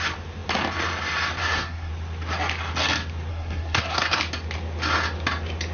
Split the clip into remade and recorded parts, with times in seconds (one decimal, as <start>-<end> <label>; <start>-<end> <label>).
0.0-1.4 recorded; 1.4-1.9 remade; 1.9-3.3 recorded; 3.3-4.2 remade; 4.2-5.7 recorded